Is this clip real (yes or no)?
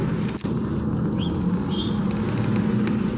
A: yes